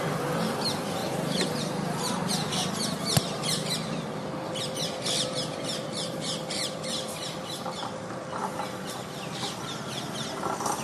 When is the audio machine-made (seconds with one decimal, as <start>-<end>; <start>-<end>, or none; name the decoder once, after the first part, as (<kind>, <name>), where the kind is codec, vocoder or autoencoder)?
1.0-2.3 (vocoder, BigVGAN v2); 5.8-6.6